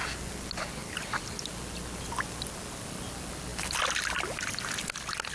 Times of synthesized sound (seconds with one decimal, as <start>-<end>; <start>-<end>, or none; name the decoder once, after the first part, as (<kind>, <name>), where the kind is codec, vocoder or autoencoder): 0.8-1.5 (vocoder, BigVGAN v2); 3.5-4.6